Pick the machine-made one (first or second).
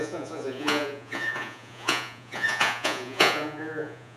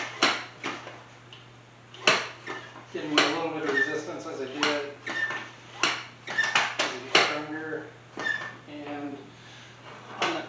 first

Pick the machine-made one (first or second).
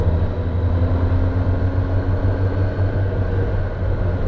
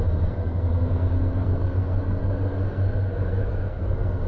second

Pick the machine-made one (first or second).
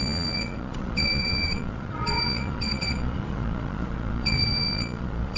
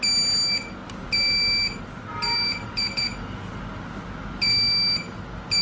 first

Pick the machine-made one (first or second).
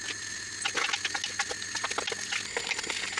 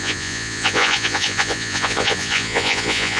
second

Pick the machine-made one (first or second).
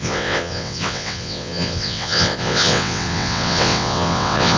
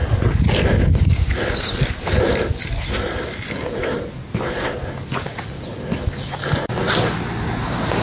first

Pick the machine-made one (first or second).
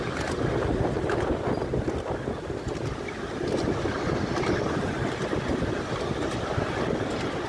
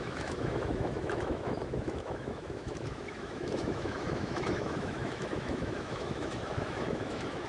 second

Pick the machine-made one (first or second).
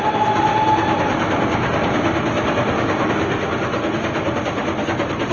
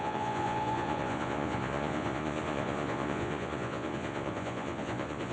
second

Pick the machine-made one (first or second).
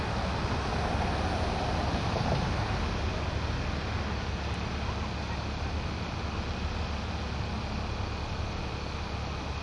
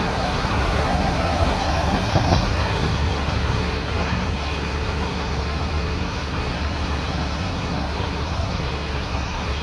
second